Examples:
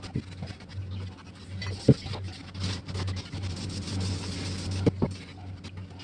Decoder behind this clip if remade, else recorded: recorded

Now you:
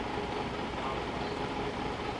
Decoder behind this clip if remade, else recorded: recorded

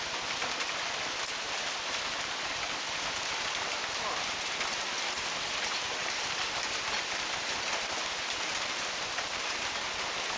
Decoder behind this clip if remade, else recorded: recorded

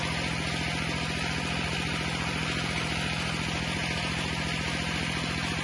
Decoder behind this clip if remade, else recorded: recorded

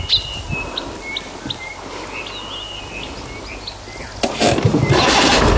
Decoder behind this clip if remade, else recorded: recorded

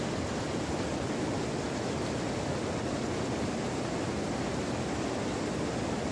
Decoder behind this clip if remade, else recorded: recorded